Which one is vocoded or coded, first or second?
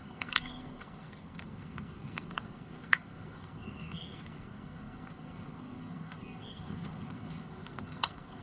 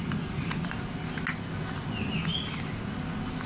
first